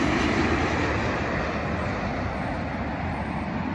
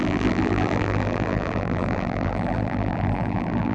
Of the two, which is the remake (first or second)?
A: second